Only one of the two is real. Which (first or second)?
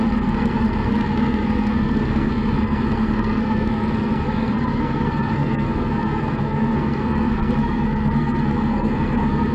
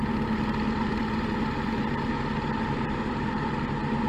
second